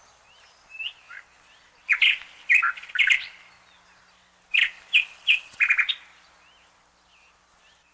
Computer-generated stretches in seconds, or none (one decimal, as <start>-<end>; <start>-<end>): none